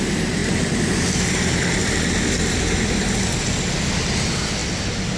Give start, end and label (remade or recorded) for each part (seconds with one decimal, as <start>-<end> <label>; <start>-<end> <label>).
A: 0.0-5.2 recorded